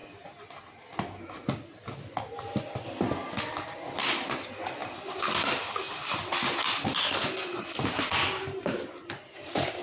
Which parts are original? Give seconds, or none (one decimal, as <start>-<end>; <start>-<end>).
0.0-9.8

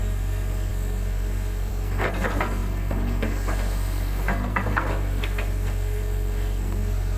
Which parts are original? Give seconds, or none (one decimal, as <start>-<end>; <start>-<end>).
none